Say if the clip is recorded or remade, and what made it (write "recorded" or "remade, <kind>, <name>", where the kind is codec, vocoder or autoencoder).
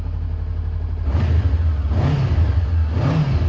recorded